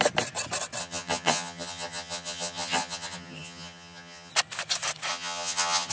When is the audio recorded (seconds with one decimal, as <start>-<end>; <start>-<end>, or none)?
0.0-0.8; 4.3-5.1